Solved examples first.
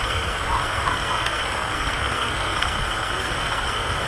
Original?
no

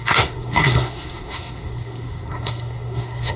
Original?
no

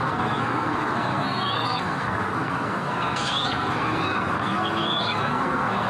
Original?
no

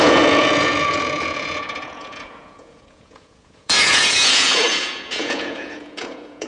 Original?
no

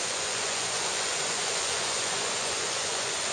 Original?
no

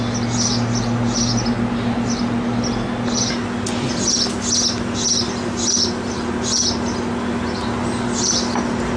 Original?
yes